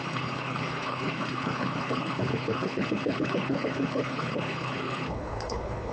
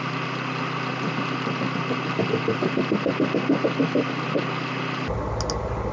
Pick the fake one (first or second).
first